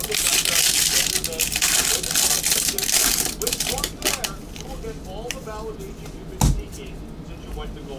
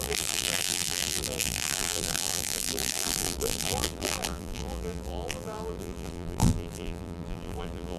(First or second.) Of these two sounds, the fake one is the second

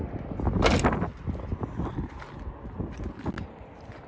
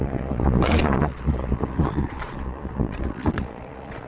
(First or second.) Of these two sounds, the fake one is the second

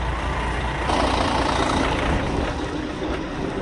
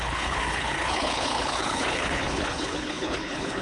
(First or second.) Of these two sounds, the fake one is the second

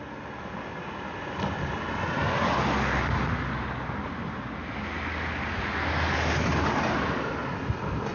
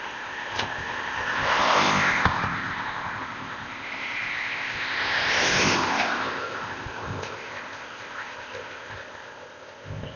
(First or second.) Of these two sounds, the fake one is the second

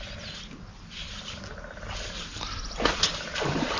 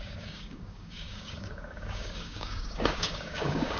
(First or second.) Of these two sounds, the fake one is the second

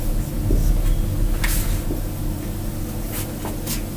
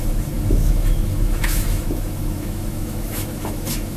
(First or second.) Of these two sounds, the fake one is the second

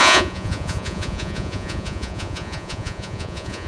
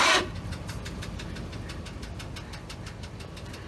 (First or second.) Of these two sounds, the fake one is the first